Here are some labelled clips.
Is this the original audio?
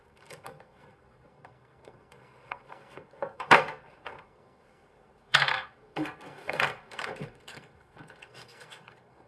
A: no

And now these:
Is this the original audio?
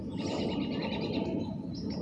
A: yes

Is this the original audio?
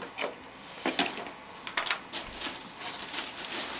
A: yes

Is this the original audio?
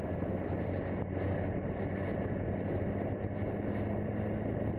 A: yes